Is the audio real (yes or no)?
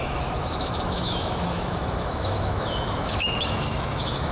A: no